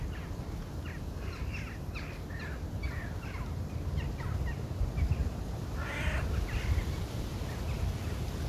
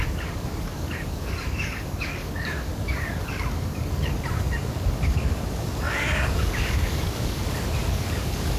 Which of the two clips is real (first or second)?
first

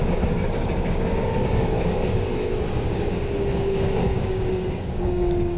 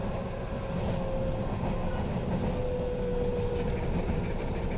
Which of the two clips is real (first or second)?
second